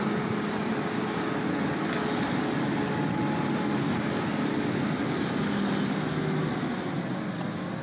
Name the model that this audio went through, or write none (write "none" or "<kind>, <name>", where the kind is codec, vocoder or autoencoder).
none